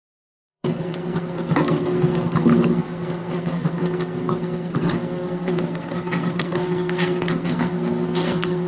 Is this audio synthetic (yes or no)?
yes